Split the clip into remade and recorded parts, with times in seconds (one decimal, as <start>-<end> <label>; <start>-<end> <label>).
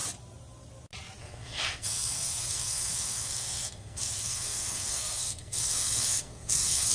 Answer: 0.0-1.2 recorded; 1.2-6.9 remade